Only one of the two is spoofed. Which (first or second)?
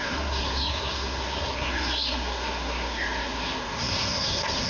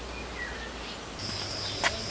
first